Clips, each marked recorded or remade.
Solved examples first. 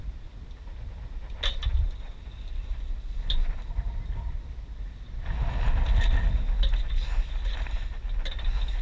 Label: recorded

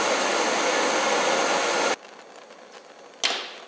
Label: recorded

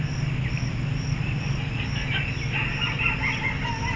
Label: recorded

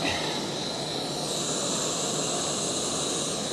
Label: recorded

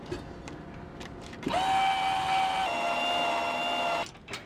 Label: recorded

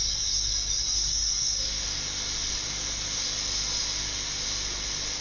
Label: recorded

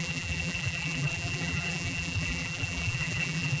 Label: remade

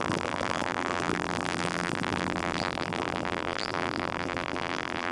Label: remade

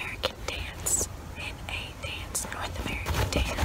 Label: remade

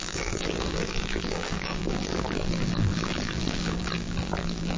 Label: remade